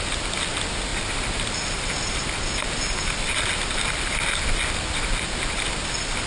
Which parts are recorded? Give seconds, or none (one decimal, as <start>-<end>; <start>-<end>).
0.0-6.3

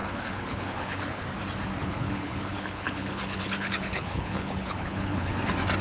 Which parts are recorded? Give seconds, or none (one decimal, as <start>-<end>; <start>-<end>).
1.2-1.8; 5.3-5.8

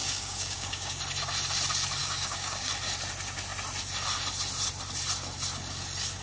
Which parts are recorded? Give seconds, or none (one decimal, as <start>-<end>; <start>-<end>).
1.0-2.0; 2.7-6.2

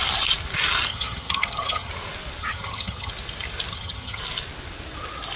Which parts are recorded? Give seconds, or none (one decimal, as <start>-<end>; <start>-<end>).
0.0-0.9; 1.9-2.4; 3.1-3.7; 4.2-5.4